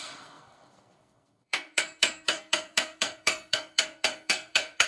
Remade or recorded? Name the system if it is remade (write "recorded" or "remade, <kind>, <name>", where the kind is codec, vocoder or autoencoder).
remade, codec, SNAC